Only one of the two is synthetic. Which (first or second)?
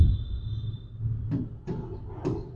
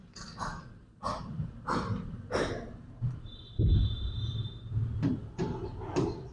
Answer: second